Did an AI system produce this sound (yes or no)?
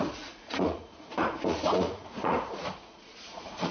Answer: yes